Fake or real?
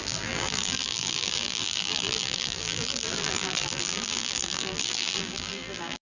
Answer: fake